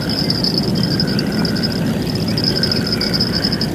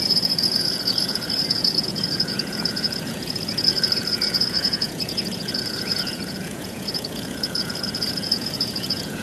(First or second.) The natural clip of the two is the first